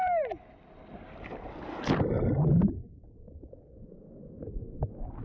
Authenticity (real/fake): real